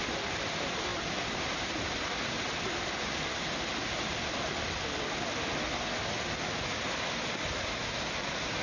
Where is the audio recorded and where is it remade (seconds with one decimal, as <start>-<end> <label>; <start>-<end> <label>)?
0.0-8.6 recorded